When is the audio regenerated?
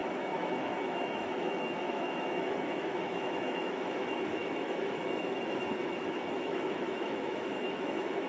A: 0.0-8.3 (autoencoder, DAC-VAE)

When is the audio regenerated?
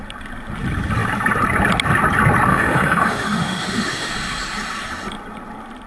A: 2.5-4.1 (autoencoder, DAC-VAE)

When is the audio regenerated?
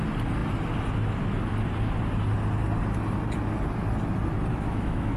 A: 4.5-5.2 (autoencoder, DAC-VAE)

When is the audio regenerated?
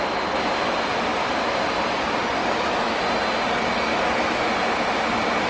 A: 2.4-3.0 (autoencoder, DAC-VAE); 3.9-4.5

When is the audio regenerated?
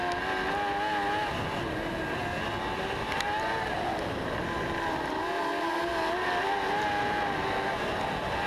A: none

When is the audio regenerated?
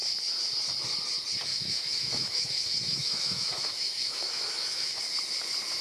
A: 1.5-5.0 (autoencoder, DAC-VAE)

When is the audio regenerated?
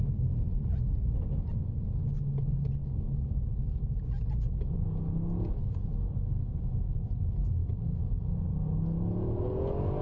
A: none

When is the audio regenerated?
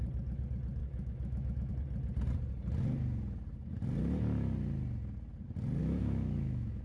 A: 0.8-1.7 (autoencoder, DAC-VAE); 5.8-6.8